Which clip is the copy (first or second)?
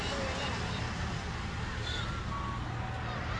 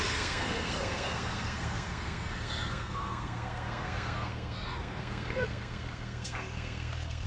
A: second